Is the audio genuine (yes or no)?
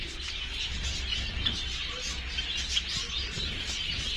yes